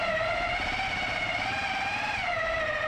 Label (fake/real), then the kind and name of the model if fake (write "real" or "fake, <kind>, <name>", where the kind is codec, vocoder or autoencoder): fake, vocoder, BigVGAN v2